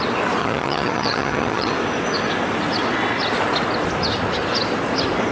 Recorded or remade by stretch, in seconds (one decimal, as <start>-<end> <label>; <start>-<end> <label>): 0.0-0.4 recorded; 0.4-1.7 remade; 1.7-5.3 recorded

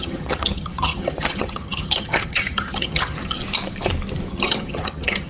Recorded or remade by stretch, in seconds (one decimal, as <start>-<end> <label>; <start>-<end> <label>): 0.0-3.4 remade; 3.4-4.3 recorded; 4.3-5.3 remade

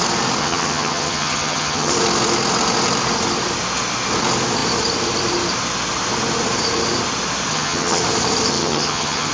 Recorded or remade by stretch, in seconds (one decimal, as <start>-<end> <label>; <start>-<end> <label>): 0.0-0.4 recorded; 0.4-1.9 remade; 1.9-7.5 recorded; 7.5-8.0 remade; 8.0-8.5 recorded; 8.5-9.3 remade